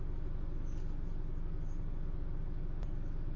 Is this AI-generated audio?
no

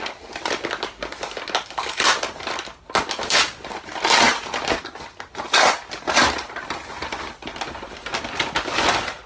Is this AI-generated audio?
no